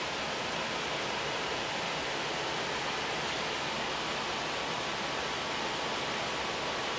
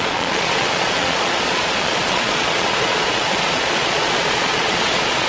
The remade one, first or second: second